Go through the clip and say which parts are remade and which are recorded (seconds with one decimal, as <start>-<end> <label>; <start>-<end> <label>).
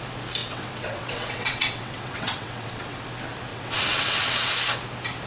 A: 0.0-0.4 recorded; 0.4-3.0 remade; 3.0-3.5 recorded; 3.5-4.5 remade; 4.5-5.3 recorded